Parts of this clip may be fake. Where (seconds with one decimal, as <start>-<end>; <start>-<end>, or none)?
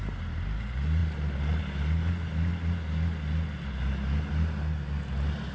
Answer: none